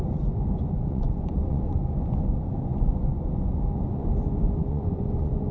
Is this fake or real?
fake